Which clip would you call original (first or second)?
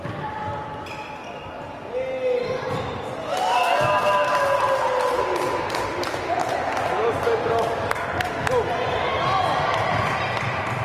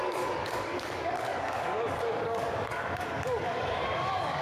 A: first